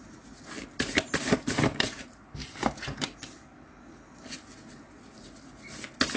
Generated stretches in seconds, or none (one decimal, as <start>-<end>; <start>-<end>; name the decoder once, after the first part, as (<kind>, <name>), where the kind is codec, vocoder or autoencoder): none